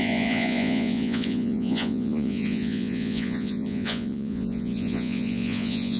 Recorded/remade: remade